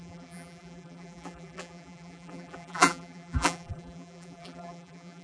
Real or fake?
fake